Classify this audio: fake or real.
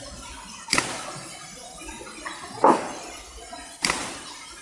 fake